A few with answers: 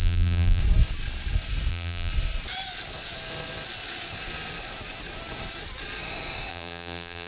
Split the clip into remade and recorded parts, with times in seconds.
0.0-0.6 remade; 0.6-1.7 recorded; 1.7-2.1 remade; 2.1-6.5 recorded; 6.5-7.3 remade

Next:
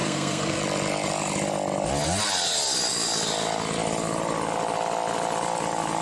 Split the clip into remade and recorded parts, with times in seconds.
0.0-0.6 remade; 0.6-6.0 recorded

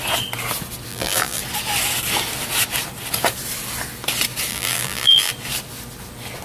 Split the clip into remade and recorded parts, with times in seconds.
0.0-0.9 recorded; 0.9-1.4 remade; 1.4-4.5 recorded; 4.5-5.3 remade; 5.3-6.4 recorded

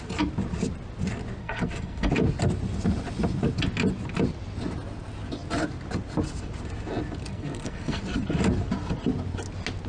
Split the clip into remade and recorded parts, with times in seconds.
0.0-1.4 recorded; 1.4-2.1 remade; 2.1-7.3 recorded; 7.3-8.0 remade; 8.0-9.9 recorded

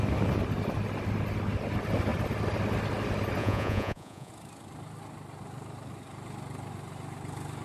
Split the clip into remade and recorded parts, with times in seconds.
0.0-3.4 recorded; 3.4-4.3 remade; 4.3-7.6 recorded

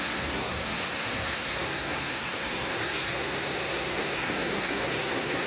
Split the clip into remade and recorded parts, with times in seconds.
0.0-5.5 remade

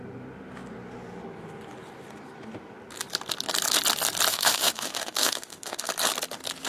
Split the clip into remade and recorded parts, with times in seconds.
0.0-4.3 recorded; 4.3-5.9 remade; 5.9-6.7 recorded